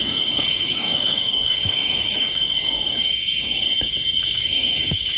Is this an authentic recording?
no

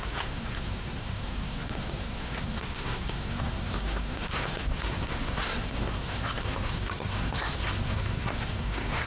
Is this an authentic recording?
no